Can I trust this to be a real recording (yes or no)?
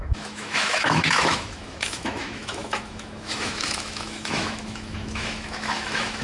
no